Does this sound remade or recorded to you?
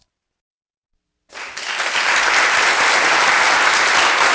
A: recorded